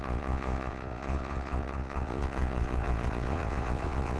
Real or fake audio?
fake